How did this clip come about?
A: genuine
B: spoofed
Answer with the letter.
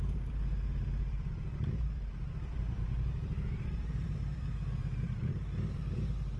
B